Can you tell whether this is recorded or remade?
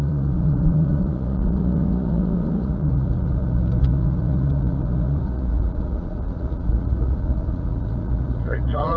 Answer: remade